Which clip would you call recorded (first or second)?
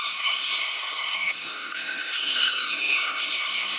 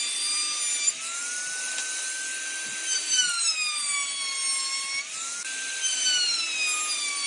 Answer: second